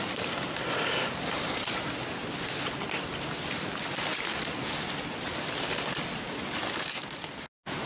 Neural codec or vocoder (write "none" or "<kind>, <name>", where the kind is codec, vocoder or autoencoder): none